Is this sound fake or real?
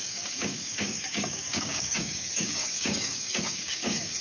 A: fake